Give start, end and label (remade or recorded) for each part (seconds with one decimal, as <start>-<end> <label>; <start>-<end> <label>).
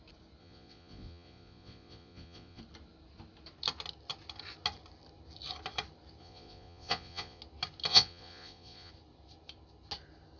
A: 0.0-0.4 recorded; 0.4-2.6 remade; 2.6-6.2 recorded; 6.2-7.4 remade; 7.4-7.9 recorded; 7.9-8.9 remade; 8.9-10.4 recorded